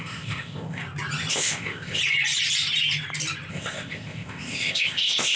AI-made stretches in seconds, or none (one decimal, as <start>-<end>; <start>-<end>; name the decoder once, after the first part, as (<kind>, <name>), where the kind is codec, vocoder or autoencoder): 0.0-0.8 (codec, ZipCodec); 1.3-2.0; 3.5-5.4